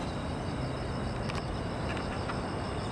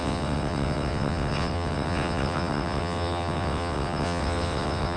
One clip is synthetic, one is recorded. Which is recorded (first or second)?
first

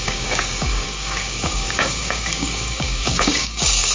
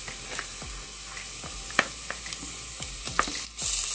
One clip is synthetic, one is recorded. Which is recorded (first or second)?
second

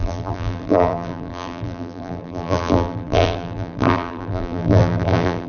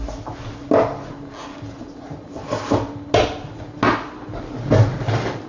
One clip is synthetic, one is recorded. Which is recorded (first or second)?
second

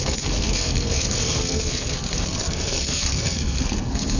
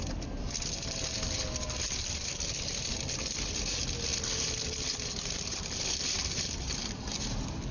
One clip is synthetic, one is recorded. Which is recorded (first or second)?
second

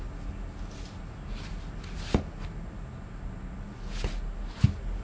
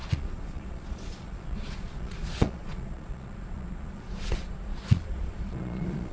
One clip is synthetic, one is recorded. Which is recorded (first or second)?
first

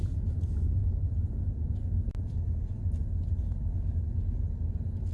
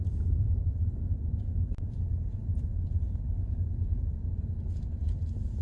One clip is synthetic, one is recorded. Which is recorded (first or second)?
first